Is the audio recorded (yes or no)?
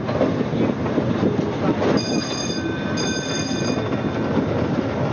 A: yes